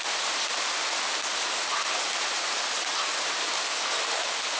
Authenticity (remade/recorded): recorded